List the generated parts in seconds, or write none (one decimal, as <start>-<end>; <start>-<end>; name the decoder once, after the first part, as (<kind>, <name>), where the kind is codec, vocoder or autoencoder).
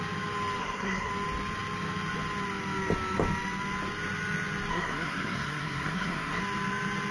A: 0.6-1.1 (codec, SNAC); 4.7-6.4